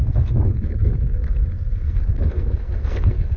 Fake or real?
fake